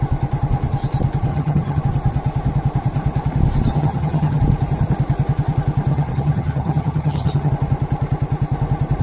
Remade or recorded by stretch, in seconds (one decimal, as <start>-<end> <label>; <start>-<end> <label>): 0.0-1.3 recorded; 1.3-1.8 remade; 1.8-3.7 recorded; 3.7-4.4 remade; 4.4-5.9 recorded; 5.9-7.5 remade; 7.5-9.0 recorded